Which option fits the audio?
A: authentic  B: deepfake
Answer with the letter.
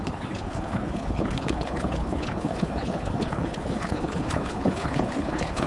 B